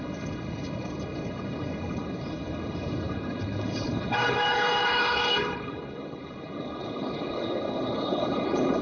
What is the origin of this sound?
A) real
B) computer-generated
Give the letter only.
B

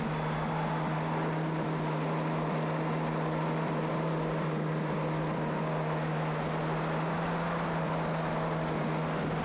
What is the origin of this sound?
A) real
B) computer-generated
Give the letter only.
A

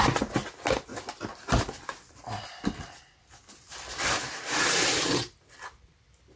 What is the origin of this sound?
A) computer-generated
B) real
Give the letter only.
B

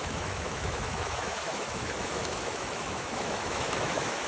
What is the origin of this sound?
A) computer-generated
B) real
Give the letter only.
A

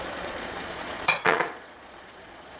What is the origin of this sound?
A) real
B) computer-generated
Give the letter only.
B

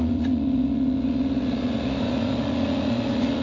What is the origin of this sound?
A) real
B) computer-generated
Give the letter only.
B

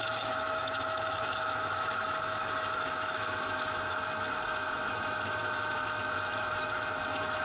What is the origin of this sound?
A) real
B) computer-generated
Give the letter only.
B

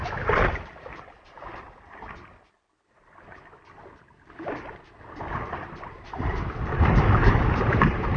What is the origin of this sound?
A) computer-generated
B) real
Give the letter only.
A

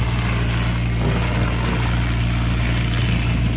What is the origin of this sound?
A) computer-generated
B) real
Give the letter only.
B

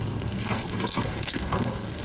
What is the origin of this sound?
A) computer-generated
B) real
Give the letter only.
A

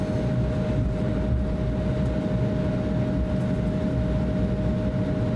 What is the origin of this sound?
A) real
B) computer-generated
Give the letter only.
A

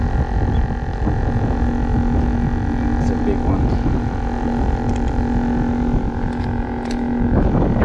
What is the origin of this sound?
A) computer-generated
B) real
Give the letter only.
B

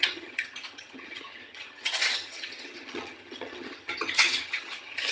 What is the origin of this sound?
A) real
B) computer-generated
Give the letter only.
B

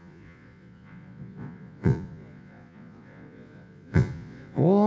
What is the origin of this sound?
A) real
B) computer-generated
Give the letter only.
B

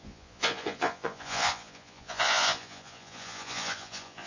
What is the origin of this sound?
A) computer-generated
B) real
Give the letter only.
A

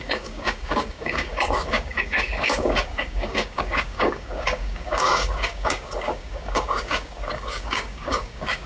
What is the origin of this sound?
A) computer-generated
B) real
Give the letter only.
A